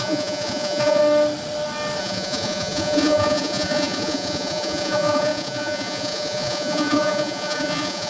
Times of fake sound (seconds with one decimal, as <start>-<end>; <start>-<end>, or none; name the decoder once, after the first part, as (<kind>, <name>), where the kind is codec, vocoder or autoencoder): 0.0-1.0 (vocoder, Vocos); 2.0-8.1